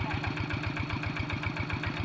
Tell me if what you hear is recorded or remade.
recorded